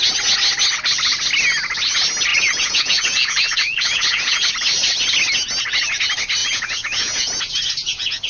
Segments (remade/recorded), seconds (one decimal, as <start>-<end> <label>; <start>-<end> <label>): 0.0-2.3 recorded; 2.3-4.5 remade; 4.5-6.4 recorded; 6.4-7.5 remade; 7.5-8.3 recorded